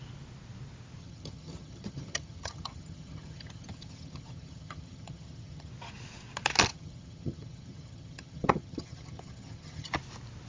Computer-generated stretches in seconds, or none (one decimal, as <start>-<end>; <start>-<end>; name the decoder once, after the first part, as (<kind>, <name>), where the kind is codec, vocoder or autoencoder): 1.0-5.7 (vocoder, HiFi-GAN); 6.7-9.9